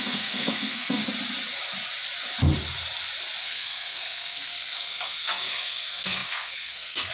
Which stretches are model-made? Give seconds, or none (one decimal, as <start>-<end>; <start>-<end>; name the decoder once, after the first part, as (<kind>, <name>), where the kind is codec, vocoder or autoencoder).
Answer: 0.0-1.0 (codec, SNAC); 3.4-7.1

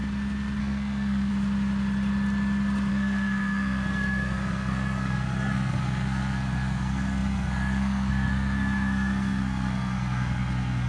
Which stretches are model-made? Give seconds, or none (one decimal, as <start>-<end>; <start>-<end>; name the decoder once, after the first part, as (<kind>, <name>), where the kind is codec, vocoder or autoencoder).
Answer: 0.6-1.3 (codec, SNAC); 2.9-10.9

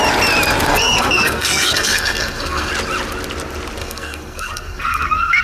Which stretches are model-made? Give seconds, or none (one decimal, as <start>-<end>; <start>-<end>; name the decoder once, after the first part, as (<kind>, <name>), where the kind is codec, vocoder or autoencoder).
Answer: 0.7-2.7 (codec, SNAC); 3.8-5.4

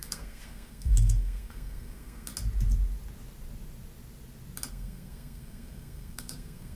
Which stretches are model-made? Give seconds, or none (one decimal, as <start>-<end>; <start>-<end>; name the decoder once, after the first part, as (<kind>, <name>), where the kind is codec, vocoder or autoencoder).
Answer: 0.0-2.3 (codec, SNAC); 4.7-6.7